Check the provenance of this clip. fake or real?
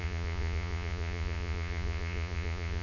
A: fake